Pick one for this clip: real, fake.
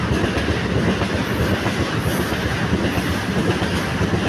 real